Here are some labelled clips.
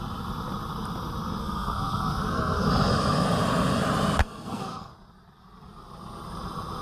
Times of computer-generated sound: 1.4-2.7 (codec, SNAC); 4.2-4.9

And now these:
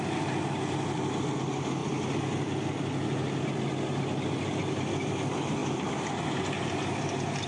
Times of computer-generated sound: none

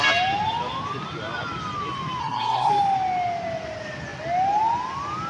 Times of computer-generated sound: 2.2-2.7 (codec, SNAC)

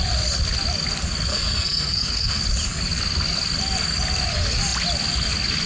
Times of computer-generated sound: 1.3-2.4 (codec, SNAC)

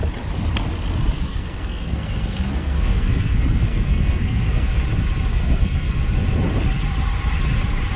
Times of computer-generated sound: 1.3-4.8 (codec, SNAC); 5.3-6.0

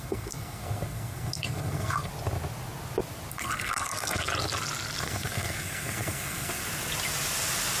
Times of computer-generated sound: 0.0-2.1 (codec, SNAC); 3.3-4.3; 5.0-6.6